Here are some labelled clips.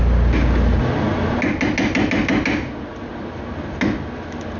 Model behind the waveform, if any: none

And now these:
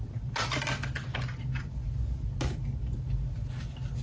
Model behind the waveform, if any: none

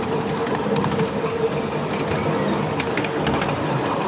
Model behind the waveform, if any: none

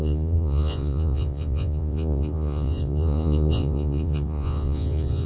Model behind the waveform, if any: vocoder, Vocos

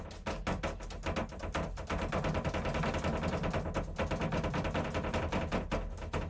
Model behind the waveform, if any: none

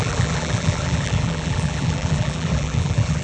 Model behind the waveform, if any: vocoder, BigVGAN v2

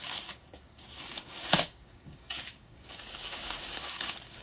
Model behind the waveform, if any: codec, DAC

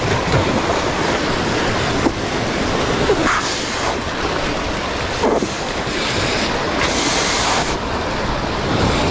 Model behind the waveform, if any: none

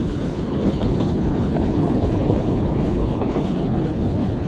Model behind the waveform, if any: codec, HILCodec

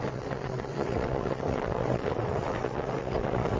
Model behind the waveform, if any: vocoder, WaveNeXt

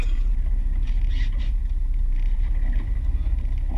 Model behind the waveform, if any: none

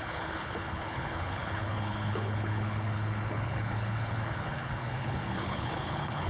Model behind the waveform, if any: codec, HILCodec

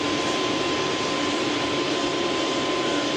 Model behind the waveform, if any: none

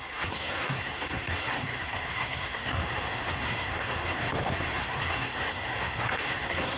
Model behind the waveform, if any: codec, SNAC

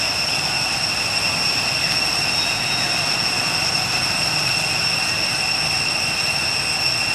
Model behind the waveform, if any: none